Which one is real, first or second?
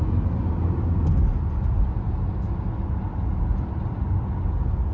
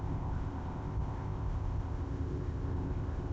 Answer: first